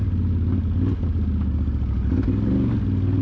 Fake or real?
real